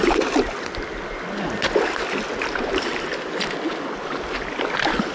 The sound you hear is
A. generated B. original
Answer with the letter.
B